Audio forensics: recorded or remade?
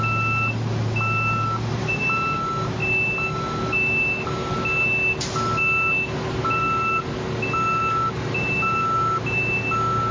recorded